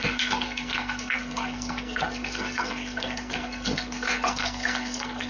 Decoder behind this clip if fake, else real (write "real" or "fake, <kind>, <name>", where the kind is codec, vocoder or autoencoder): fake, codec, SNAC